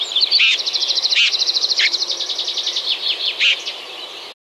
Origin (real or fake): real